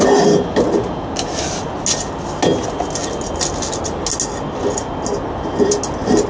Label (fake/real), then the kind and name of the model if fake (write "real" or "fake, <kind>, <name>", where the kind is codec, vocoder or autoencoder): real